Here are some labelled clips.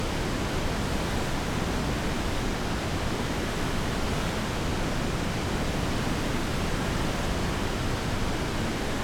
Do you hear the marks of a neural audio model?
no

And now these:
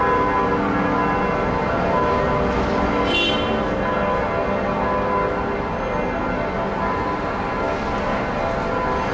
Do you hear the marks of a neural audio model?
no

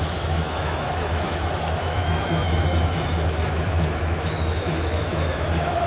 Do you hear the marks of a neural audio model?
yes